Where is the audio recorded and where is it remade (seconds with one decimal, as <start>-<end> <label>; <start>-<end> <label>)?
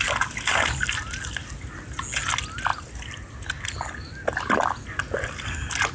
0.0-5.9 recorded